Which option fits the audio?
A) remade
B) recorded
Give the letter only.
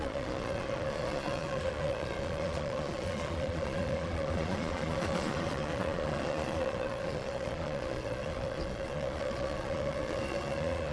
A